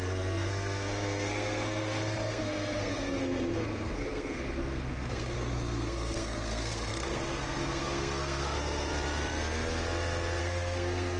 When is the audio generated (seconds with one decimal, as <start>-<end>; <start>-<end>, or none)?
0.0-8.9; 10.4-11.2